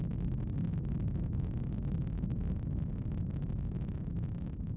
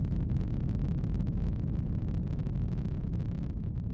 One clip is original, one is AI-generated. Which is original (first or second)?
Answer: second